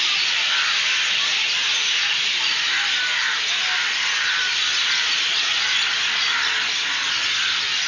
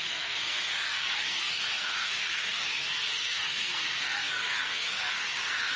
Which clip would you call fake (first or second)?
second